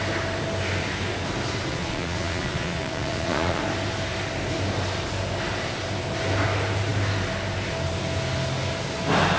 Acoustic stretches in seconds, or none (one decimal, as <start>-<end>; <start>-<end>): 0.0-1.7; 3.6-9.4